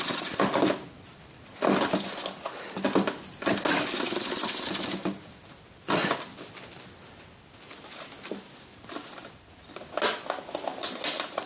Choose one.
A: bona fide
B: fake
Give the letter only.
A